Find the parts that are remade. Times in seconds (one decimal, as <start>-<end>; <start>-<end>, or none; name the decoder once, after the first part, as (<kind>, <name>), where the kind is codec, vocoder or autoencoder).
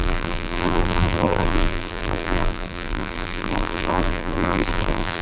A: 0.0-5.2 (vocoder, BigVGAN v2)